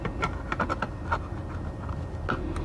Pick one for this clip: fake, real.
real